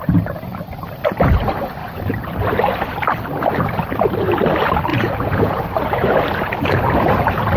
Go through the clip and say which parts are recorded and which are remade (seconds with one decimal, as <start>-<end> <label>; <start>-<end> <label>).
0.0-4.9 recorded; 4.9-5.6 remade; 5.6-7.6 recorded